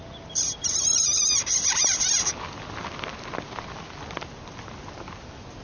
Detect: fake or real real